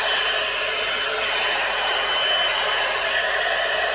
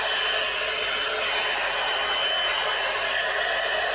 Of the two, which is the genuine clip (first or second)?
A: second